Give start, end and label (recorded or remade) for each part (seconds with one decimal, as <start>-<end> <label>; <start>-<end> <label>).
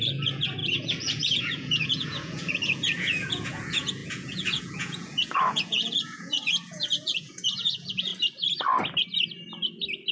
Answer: 0.0-8.1 remade; 8.1-10.1 recorded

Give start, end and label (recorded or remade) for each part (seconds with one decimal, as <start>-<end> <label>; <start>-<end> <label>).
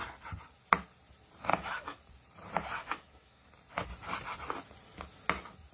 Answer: 0.0-1.5 recorded; 1.5-2.0 remade; 2.0-2.8 recorded; 2.8-3.5 remade; 3.5-5.7 recorded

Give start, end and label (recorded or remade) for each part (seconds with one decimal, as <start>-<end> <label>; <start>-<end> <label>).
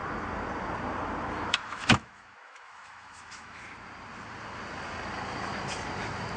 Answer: 0.0-1.5 recorded; 1.5-3.6 remade; 3.6-6.4 recorded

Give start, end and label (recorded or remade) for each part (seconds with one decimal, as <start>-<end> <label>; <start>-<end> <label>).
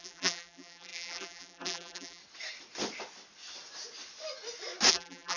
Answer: 0.0-2.2 remade; 2.2-4.9 recorded; 4.9-5.4 remade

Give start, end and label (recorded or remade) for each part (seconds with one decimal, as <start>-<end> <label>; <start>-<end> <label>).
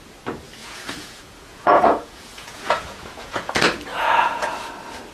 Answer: 0.0-0.6 recorded; 0.6-3.5 remade; 3.5-3.9 recorded; 3.9-4.5 remade; 4.5-5.1 recorded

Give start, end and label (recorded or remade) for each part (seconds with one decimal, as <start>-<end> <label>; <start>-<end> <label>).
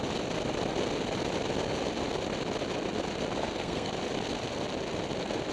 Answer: 0.0-3.4 recorded; 3.4-3.9 remade; 3.9-5.5 recorded